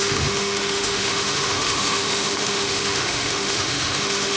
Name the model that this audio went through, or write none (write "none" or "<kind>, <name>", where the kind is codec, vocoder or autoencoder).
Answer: autoencoder, DAC-VAE